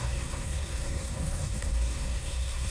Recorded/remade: remade